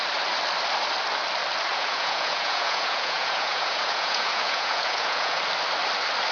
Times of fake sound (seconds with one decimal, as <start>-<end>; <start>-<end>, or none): 1.7-5.4